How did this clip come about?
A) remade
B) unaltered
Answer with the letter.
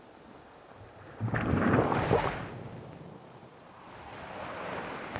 B